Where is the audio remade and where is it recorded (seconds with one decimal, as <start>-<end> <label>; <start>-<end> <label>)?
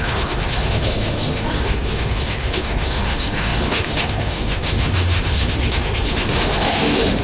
0.0-7.2 remade